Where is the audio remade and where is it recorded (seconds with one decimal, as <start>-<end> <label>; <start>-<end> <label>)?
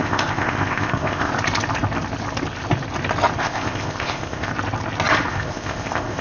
0.0-1.3 remade; 1.3-3.4 recorded; 3.4-4.5 remade; 4.5-5.3 recorded; 5.3-6.2 remade